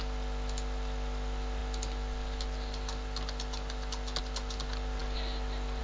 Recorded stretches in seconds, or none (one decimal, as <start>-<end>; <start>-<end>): 0.0-5.8